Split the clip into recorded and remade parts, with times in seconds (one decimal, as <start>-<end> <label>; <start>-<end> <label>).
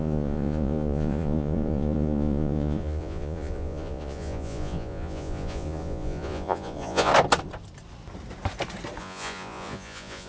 0.0-7.1 remade; 7.1-9.0 recorded; 9.0-10.3 remade